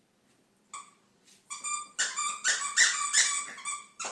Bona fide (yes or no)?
yes